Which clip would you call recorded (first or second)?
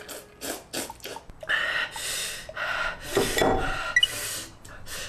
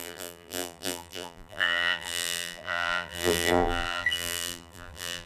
first